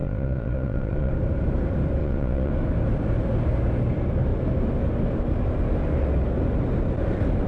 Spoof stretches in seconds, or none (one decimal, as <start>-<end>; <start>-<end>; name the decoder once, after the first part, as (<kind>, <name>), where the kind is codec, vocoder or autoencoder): 0.0-1.1 (vocoder, Vocos); 2.0-2.5